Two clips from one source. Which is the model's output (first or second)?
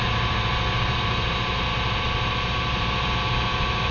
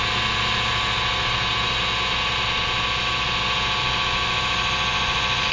first